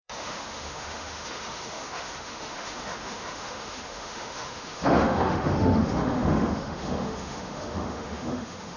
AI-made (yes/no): yes